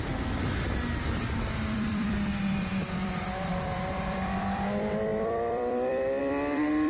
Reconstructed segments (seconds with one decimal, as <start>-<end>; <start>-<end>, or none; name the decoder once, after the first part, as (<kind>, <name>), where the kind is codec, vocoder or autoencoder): 0.0-6.9 (vocoder, BigVGAN v2)